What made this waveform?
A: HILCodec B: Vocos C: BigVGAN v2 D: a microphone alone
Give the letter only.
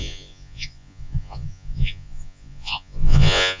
B